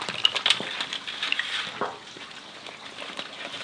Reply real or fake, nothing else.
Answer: real